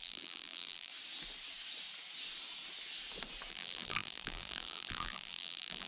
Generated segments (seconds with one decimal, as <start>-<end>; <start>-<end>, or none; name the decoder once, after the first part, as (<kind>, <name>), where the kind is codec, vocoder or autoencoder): 0.0-0.9 (vocoder, BigVGAN v2); 3.5-5.9